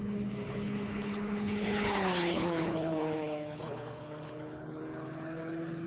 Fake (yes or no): yes